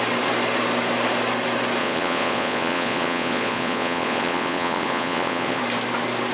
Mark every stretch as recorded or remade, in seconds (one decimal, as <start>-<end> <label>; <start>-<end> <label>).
0.0-1.8 recorded; 1.8-5.6 remade; 5.6-6.3 recorded